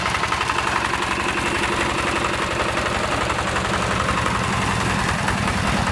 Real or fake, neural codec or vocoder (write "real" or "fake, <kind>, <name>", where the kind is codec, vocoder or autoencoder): real